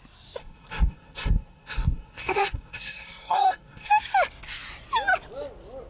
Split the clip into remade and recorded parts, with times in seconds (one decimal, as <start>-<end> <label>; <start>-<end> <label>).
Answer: 0.0-0.4 recorded; 0.4-3.9 remade; 3.9-5.9 recorded